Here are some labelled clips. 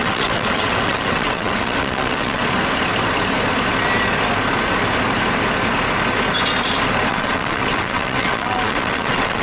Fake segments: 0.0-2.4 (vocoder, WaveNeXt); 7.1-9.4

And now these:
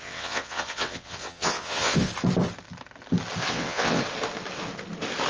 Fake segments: 0.0-2.1 (vocoder, WaveNeXt); 3.5-4.0

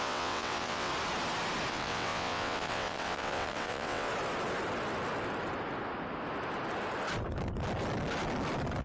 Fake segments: 0.0-0.9 (vocoder, WaveNeXt); 1.7-4.1

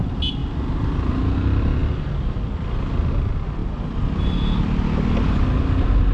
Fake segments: none

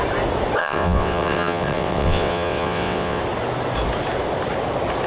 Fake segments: 0.6-3.2 (vocoder, WaveNeXt)